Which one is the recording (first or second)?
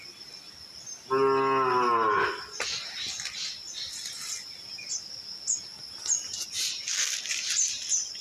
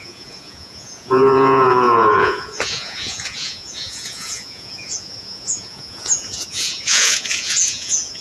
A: first